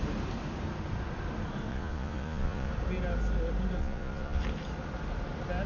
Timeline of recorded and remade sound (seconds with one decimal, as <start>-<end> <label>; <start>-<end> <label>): 0.0-1.7 recorded; 1.7-2.7 remade; 2.7-3.8 recorded; 3.8-4.4 remade; 4.4-5.7 recorded